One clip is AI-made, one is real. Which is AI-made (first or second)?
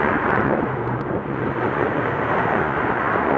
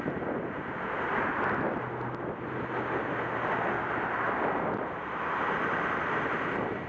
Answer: first